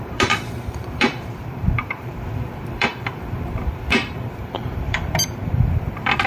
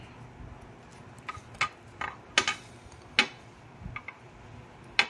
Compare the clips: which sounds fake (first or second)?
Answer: first